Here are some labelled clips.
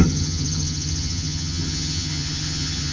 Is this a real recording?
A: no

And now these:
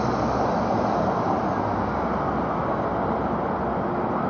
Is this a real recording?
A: yes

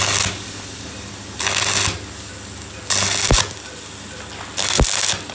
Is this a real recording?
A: yes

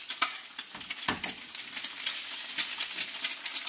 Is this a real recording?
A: yes